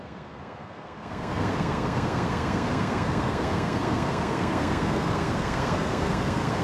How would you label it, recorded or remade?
remade